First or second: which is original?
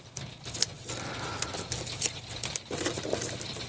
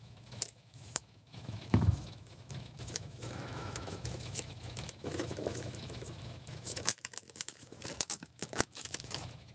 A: first